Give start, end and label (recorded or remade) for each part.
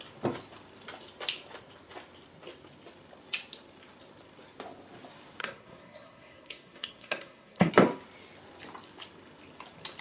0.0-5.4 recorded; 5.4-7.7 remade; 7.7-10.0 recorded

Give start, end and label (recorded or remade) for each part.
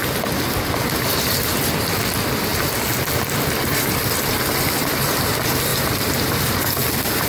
0.0-5.7 recorded; 5.7-6.4 remade; 6.4-7.3 recorded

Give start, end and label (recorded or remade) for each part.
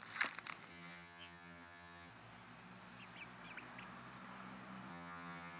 0.0-0.7 recorded; 0.7-2.1 remade; 2.1-4.9 recorded; 4.9-5.6 remade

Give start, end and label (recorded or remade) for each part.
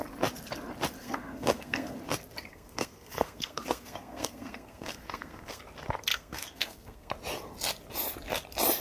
0.0-1.0 recorded; 1.0-2.0 remade; 2.0-2.5 recorded; 2.5-5.6 remade; 5.6-6.1 recorded; 6.1-7.1 remade; 7.1-8.8 recorded